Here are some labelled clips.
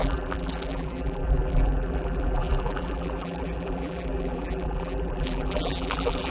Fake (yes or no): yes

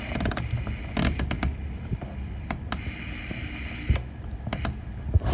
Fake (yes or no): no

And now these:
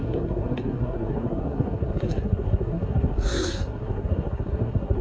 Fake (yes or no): yes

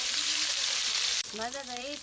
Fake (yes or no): yes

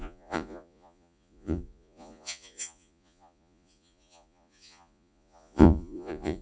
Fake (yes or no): yes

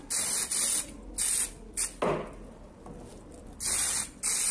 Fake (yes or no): no